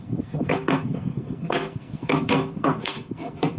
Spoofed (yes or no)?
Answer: yes